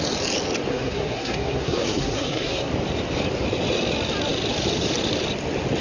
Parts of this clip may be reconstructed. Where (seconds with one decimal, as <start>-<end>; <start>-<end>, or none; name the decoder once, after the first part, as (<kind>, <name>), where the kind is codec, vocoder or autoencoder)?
0.7-2.7 (codec, SNAC)